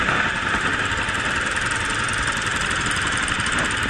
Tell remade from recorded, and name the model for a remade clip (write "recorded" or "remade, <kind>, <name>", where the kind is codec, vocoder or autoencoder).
recorded